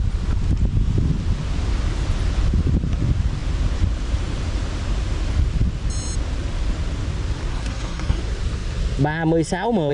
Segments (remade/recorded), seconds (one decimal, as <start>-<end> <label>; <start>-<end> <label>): 0.0-7.5 recorded; 7.5-8.2 remade; 8.2-9.9 recorded